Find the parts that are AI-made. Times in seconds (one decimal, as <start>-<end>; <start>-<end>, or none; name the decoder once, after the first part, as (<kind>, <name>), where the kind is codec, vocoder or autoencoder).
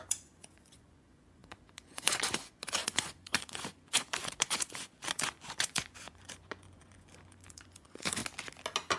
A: 0.0-8.2 (vocoder, Vocos)